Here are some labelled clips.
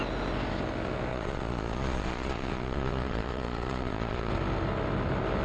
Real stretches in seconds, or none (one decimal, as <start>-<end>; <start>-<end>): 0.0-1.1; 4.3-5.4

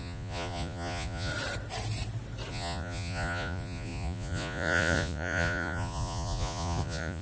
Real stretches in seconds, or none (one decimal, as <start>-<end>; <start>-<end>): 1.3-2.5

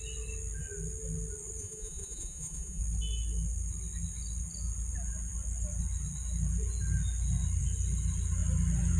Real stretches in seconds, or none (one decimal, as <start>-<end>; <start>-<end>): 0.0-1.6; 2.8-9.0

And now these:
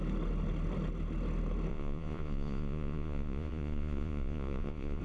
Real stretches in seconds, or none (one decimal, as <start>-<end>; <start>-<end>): 0.0-1.7

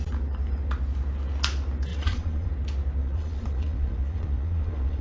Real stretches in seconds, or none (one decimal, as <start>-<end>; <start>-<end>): 0.0-1.9; 2.5-3.0

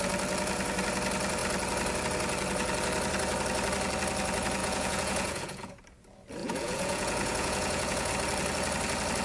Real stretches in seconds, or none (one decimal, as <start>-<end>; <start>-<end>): 0.0-4.6; 5.8-6.4; 8.1-9.2

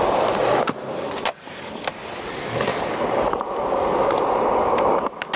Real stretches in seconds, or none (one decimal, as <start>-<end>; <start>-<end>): 0.0-5.4

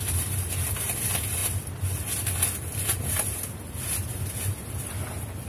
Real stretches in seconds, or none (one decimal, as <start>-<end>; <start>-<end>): 0.0-5.5